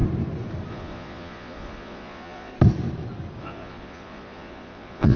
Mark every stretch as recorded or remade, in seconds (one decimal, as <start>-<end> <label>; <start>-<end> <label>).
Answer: 0.0-0.7 recorded; 0.7-2.5 remade; 2.5-3.4 recorded; 3.4-5.2 remade